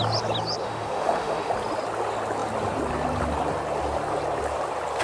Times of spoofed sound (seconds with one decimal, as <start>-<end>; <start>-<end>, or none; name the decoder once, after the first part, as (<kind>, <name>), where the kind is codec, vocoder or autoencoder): 0.6-1.5 (autoencoder, DAC-VAE)

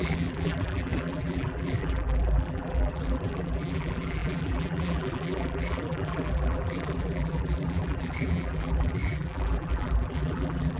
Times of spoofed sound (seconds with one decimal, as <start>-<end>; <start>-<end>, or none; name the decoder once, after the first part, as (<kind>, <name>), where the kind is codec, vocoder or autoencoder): 0.0-10.8 (vocoder, BigVGAN v2)

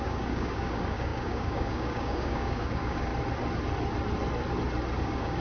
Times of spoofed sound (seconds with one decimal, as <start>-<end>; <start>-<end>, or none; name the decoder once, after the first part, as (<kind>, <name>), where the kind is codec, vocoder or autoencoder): 0.0-3.1 (codec, DAC); 5.0-5.4

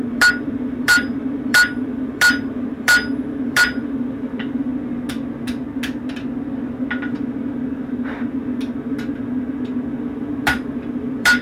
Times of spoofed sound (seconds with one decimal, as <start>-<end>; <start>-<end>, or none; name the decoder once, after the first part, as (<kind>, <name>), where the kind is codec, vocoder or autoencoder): 0.0-4.7 (vocoder, BigVGAN v2); 10.0-11.4

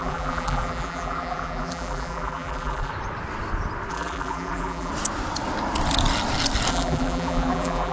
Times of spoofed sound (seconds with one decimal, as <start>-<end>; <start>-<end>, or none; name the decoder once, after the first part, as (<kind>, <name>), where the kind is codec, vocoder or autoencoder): 0.0-2.9 (vocoder, BigVGAN v2); 3.9-4.9; 6.7-7.9

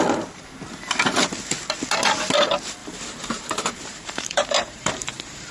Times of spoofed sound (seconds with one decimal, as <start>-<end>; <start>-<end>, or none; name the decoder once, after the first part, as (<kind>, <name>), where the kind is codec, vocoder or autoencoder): 2.8-5.5 (vocoder, BigVGAN v2)